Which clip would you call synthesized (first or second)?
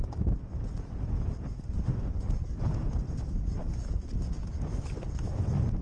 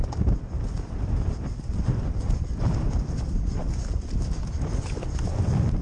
second